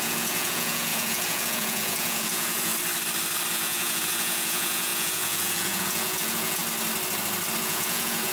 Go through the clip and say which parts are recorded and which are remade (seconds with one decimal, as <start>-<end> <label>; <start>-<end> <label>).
0.0-2.7 remade; 2.7-3.5 recorded; 3.5-6.6 remade; 6.6-7.6 recorded; 7.6-8.3 remade